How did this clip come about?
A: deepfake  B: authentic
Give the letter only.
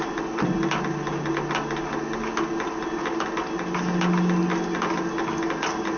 B